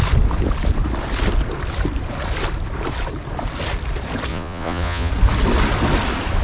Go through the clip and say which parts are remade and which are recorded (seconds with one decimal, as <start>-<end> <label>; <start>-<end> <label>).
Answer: 0.0-4.3 recorded; 4.3-5.1 remade; 5.1-6.4 recorded